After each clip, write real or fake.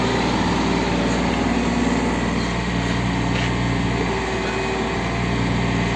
real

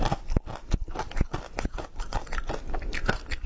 fake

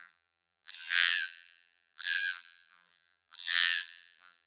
fake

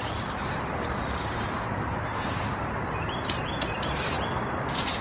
fake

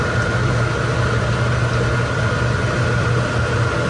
real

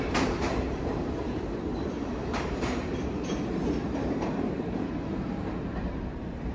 fake